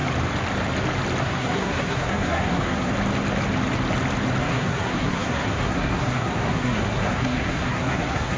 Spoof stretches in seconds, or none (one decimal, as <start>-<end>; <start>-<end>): 1.2-2.9; 4.4-8.4